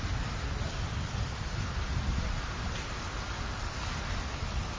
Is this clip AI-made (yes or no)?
no